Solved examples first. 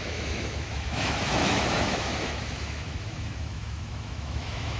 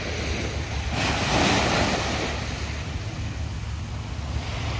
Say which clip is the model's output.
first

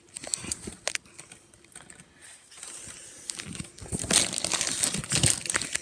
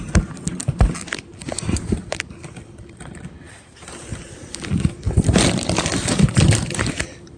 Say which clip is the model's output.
second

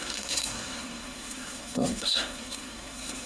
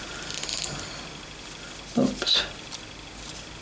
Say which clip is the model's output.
first